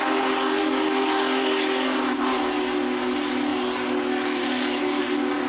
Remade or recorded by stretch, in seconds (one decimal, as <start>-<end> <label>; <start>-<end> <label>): 0.0-5.5 recorded